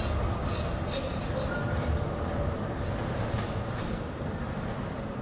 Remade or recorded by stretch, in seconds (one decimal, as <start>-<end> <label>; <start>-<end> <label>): 0.0-3.8 recorded; 3.8-4.4 remade; 4.4-5.2 recorded